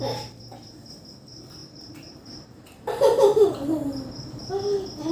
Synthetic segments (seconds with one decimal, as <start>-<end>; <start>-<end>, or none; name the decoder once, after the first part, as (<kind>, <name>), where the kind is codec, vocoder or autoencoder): 1.6-4.5 (vocoder, BigVGAN v2)